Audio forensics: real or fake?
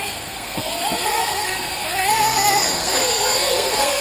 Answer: fake